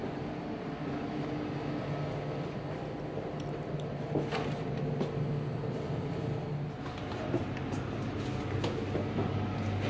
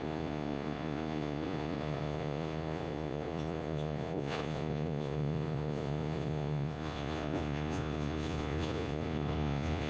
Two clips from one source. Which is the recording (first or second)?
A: first